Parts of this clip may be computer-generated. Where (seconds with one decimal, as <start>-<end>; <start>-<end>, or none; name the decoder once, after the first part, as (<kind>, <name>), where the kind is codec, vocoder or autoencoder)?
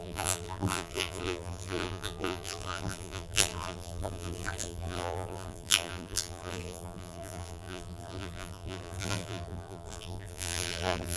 0.0-11.2 (vocoder, BigVGAN v2)